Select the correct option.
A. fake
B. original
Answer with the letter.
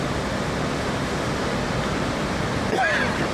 B